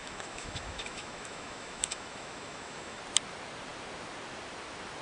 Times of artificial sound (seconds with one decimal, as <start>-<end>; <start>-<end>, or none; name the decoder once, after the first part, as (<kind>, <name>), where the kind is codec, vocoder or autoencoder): 0.0-3.0 (autoencoder, DAC-VAE)